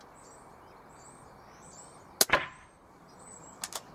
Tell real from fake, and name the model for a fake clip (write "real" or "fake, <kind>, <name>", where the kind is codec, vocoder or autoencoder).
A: real